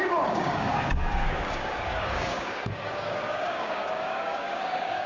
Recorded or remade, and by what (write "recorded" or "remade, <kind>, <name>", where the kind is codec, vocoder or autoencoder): remade, codec, DAC